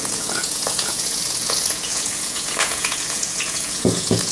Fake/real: fake